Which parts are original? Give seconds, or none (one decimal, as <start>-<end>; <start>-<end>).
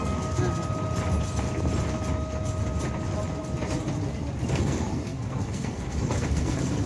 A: 0.4-4.5